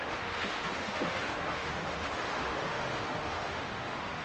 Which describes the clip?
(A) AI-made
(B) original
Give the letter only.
A